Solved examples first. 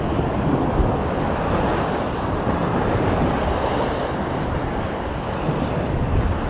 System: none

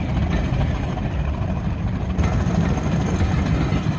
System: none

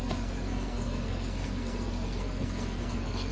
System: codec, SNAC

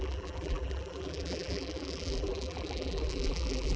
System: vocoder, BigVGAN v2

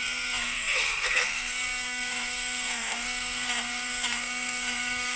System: codec, SNAC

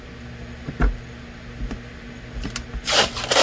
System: none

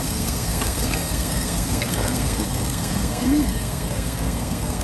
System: codec, SNAC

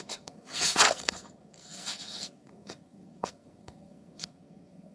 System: codec, SNAC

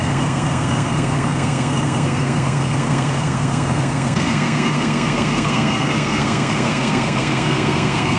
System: codec, SNAC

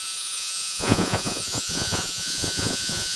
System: vocoder, Vocos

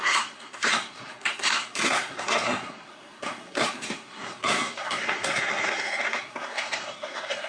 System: codec, SNAC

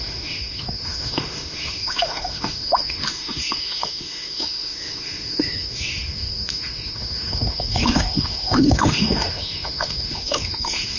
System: autoencoder, DAC-VAE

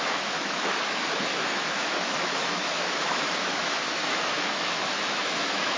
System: autoencoder, DAC-VAE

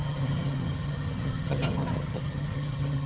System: vocoder, HiFi-GAN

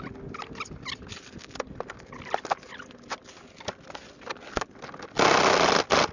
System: none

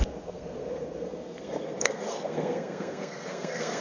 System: codec, SNAC